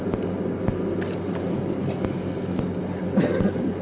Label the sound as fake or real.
real